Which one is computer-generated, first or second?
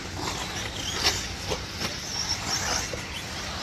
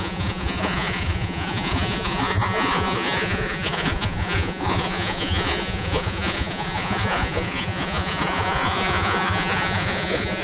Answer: second